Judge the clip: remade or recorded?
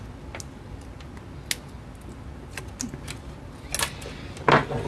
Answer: recorded